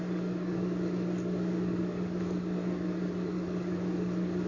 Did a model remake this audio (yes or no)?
yes